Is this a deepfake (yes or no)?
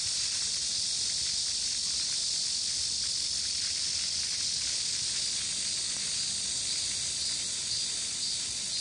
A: no